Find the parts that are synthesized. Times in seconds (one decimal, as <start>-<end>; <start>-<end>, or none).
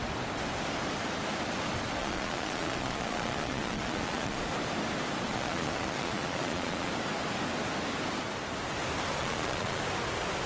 2.0-4.4; 5.3-6.9; 9.2-9.8